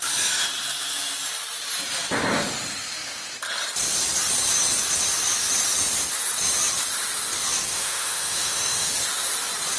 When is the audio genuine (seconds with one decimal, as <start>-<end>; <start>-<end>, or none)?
0.0-7.7; 8.9-9.8